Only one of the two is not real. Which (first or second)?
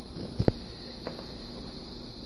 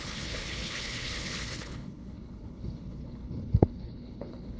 second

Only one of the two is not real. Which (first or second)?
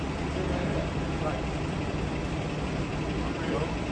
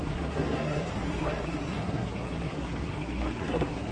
second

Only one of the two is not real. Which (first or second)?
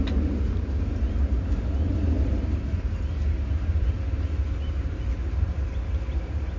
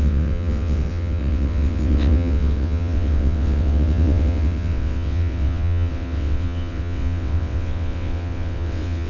second